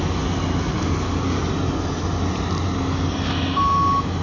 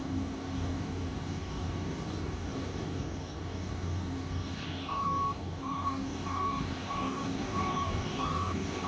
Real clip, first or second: first